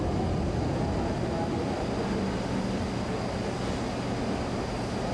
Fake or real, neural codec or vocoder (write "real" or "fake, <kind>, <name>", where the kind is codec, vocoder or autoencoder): real